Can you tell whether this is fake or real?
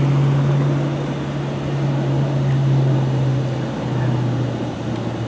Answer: real